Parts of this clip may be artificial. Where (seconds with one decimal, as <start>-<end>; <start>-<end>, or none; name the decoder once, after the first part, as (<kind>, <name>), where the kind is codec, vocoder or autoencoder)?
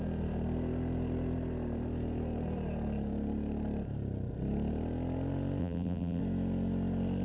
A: 5.6-6.2 (vocoder, BigVGAN v2)